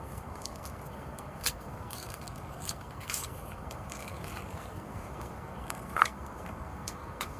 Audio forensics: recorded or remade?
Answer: remade